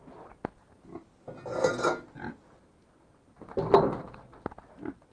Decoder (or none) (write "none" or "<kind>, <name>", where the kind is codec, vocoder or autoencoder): none